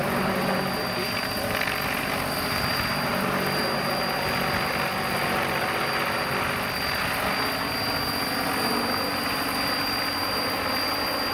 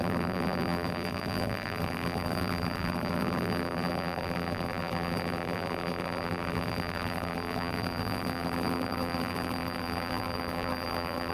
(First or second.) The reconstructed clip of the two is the second